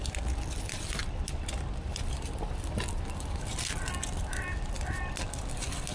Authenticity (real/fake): real